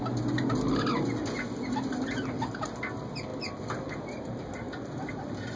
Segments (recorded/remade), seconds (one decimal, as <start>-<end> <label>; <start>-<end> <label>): 0.0-5.6 recorded